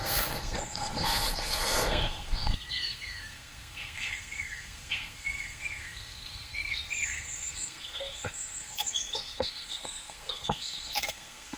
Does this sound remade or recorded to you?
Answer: remade